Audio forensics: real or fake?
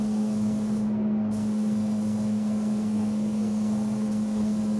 fake